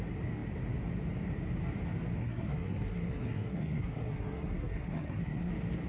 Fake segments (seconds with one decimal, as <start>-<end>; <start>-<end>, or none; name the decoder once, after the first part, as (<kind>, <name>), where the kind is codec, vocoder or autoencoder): 2.2-5.5 (codec, SNAC)